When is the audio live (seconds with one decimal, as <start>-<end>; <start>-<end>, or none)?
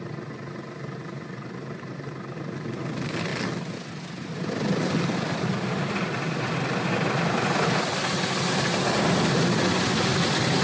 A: 0.0-10.6